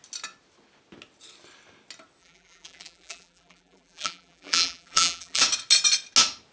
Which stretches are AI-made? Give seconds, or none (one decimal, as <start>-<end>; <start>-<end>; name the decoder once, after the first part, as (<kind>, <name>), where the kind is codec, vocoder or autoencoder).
2.2-5.4 (vocoder, BigVGAN v2)